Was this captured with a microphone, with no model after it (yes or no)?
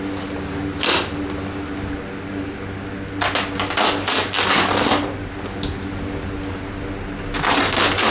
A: yes